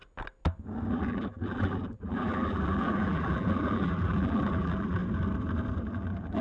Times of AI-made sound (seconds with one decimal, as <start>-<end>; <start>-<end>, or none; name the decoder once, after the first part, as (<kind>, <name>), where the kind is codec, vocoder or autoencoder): 0.9-5.0 (vocoder, BigVGAN v2); 5.8-6.4